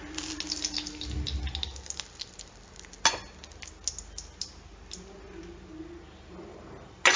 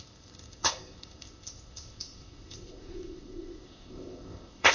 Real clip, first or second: first